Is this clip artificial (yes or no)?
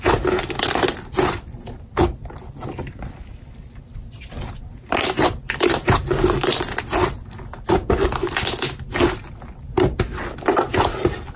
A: no